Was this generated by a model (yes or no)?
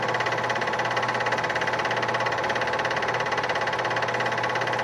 no